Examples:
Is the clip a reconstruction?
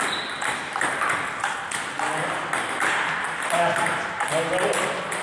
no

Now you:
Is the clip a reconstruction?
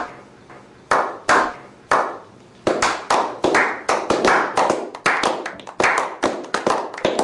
no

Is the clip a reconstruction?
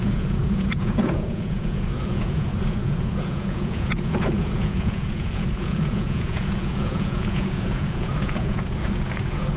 yes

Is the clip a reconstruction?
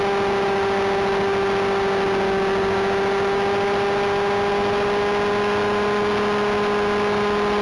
no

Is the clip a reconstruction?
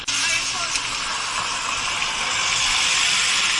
no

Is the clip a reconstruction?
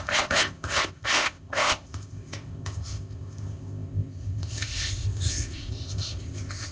yes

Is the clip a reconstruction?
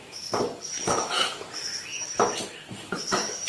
yes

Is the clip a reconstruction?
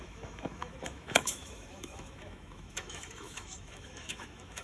yes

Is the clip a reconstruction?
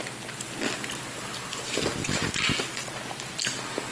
no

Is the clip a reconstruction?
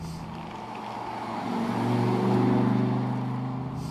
no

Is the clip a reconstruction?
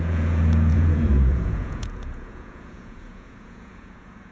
yes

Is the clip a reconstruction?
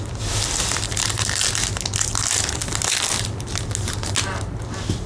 no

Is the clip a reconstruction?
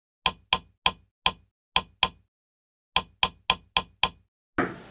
no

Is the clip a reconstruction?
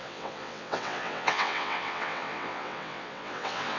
yes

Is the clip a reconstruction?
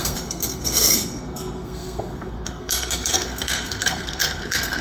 yes